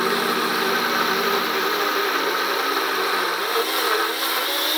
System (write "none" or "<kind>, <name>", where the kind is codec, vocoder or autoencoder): none